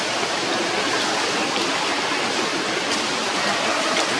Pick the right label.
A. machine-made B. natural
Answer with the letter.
B